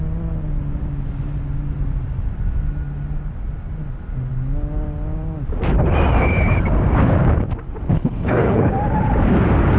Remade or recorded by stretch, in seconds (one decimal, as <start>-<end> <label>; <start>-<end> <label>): 0.0-7.9 recorded; 7.9-8.7 remade; 8.7-9.8 recorded